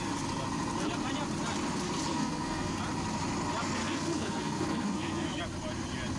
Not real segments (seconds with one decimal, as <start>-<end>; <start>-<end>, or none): 2.1-2.8; 3.8-5.4